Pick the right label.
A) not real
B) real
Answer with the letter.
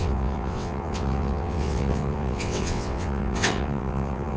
A